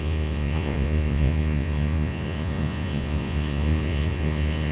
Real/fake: fake